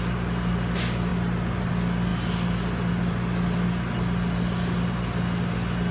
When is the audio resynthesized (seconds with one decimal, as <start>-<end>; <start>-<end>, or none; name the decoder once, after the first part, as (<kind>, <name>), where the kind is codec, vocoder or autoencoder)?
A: none